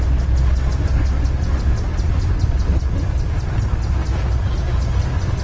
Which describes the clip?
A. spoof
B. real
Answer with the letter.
B